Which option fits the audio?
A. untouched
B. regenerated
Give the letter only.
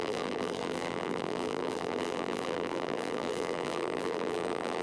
B